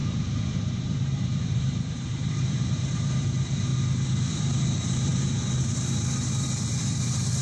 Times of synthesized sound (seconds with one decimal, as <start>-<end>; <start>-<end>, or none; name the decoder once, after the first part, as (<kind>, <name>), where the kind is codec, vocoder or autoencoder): 0.0-3.7 (vocoder, BigVGAN v2); 4.3-7.4